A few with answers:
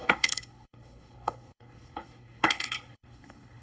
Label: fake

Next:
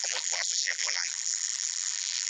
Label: fake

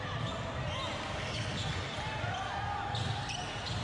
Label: real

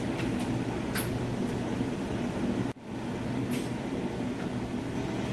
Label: real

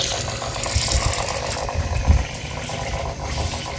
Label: real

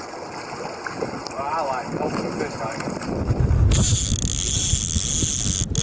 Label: real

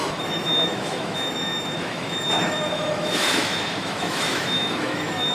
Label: fake